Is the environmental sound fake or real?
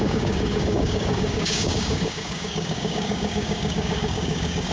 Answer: fake